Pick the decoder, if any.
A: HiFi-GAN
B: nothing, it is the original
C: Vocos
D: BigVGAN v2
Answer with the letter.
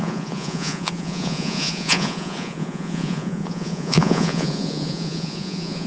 C